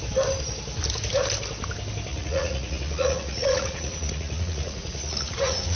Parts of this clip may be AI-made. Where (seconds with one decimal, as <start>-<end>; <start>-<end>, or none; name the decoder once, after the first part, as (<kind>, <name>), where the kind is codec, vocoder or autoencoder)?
2.1-5.8 (vocoder, Vocos)